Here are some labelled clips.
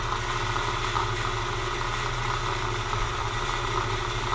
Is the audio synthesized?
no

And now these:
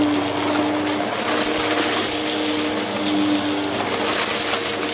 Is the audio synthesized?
no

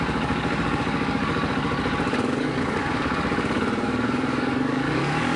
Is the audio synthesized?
yes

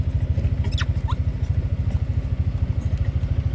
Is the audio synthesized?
no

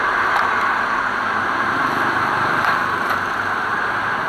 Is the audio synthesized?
yes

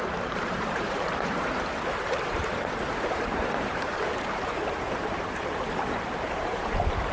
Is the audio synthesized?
yes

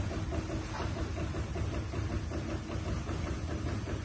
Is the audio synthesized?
no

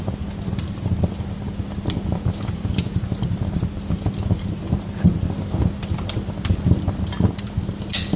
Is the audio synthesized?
no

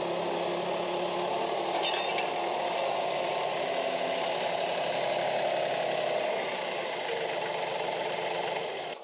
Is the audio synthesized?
no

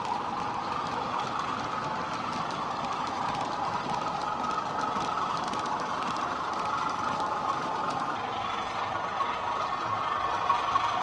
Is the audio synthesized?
no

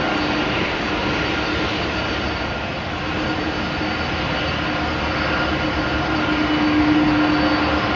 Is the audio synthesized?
no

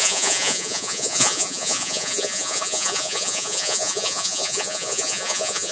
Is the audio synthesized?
yes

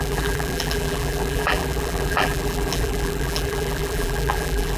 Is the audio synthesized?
yes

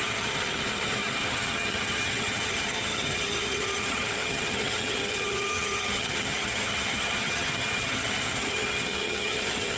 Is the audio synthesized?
yes